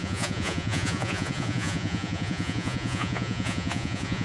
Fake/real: fake